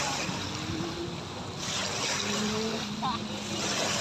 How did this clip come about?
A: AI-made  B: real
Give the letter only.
B